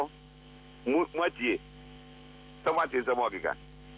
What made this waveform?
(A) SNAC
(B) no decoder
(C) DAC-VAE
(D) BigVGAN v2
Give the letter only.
C